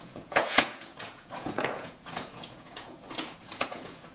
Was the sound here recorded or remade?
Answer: remade